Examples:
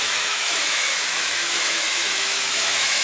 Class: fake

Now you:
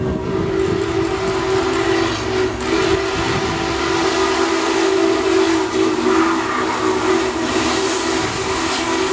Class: real